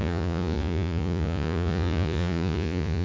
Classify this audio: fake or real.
fake